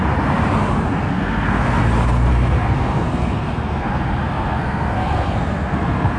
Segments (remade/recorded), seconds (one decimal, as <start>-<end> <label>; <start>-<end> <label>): 0.0-0.9 recorded; 0.9-1.8 remade; 1.8-2.3 recorded; 2.3-6.2 remade